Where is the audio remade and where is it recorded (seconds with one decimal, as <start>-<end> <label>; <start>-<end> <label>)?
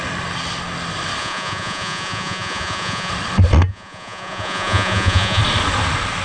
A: 0.0-1.2 recorded; 1.2-3.1 remade; 3.1-3.7 recorded; 3.7-5.4 remade; 5.4-6.2 recorded